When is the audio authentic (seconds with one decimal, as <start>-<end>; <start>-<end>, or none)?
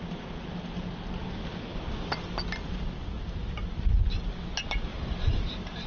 0.0-4.9